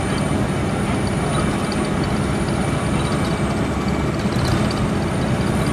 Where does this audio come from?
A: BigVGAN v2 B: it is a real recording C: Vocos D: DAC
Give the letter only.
B